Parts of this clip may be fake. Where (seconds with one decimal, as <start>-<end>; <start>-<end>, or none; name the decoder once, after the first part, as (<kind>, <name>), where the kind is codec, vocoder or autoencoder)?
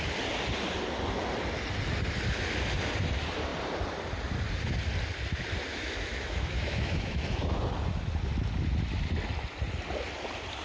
5.7-7.6 (autoencoder, DAC-VAE)